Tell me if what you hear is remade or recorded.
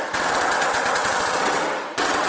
remade